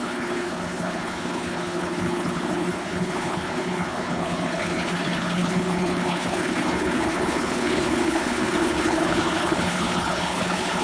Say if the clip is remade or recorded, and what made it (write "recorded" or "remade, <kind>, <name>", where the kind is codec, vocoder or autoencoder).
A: remade, codec, HILCodec